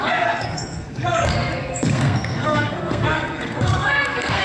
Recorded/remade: remade